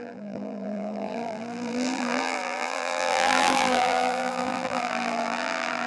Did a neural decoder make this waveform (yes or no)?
yes